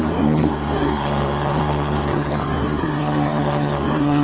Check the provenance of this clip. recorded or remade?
remade